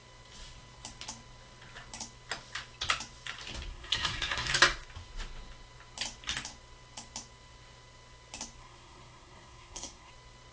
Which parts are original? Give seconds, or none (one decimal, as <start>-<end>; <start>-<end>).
0.0-3.7; 4.5-8.6; 10.1-10.5